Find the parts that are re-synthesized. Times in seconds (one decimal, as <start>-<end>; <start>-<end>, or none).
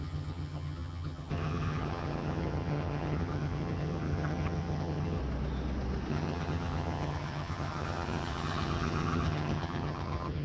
0.0-5.2; 6.1-10.4